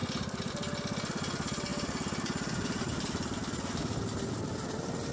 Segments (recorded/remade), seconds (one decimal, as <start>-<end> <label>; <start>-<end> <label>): 0.0-5.1 recorded